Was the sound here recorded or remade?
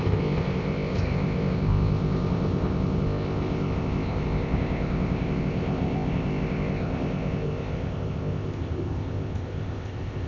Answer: remade